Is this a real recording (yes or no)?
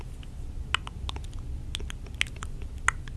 yes